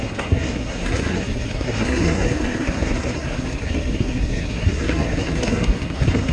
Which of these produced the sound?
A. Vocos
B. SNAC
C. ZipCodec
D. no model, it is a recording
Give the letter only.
B